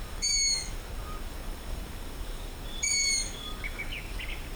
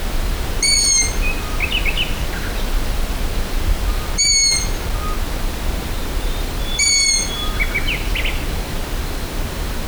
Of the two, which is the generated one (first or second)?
first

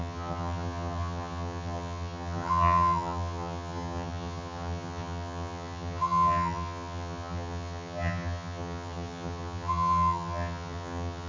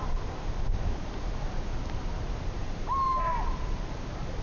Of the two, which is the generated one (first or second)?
first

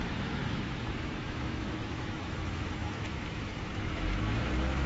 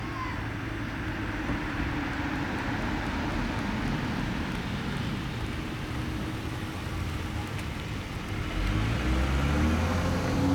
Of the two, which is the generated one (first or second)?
first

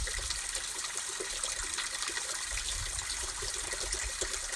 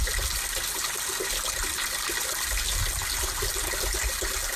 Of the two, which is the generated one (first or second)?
first